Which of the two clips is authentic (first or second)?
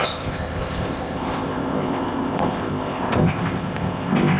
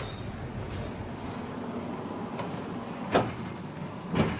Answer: second